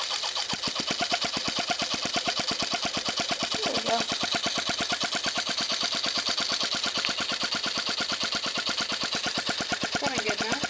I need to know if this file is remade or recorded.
recorded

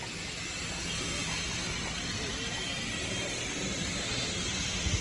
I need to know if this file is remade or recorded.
recorded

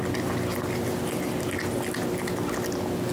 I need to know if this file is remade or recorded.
recorded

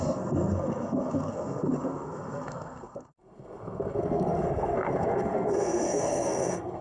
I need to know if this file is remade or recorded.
remade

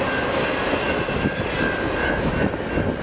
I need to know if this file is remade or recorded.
recorded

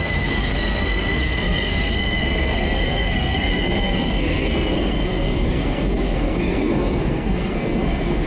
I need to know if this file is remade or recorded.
remade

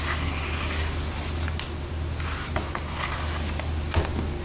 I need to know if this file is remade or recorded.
recorded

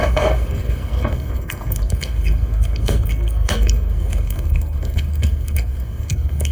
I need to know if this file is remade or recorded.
remade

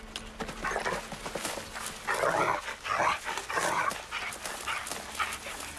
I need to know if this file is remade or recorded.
recorded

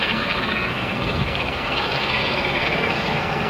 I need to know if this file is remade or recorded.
remade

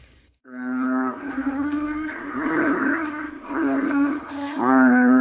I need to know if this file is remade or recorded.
remade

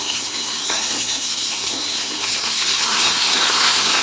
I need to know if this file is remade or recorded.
remade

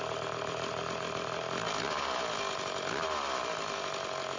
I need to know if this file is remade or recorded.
recorded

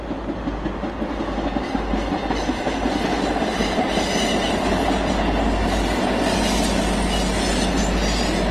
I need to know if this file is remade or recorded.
recorded